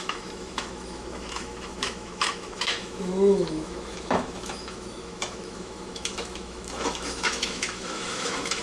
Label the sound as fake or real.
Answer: fake